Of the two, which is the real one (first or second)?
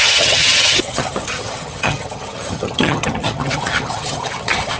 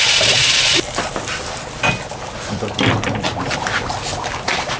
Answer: second